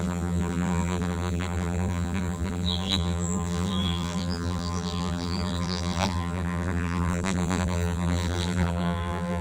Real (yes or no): no